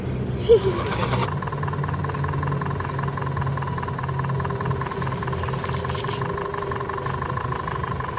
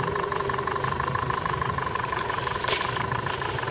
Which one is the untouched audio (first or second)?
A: first